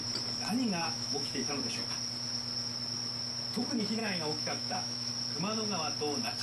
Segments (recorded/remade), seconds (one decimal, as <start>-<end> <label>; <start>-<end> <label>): 0.0-0.8 recorded; 0.8-1.5 remade; 1.5-4.0 recorded; 4.0-5.1 remade; 5.1-6.4 recorded